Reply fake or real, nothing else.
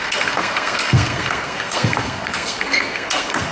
fake